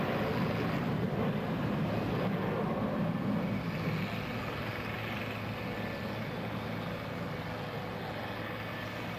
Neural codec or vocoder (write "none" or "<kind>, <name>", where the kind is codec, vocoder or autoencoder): none